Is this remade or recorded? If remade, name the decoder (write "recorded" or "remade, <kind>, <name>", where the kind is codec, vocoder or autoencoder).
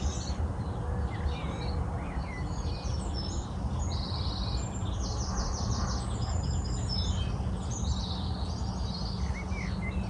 recorded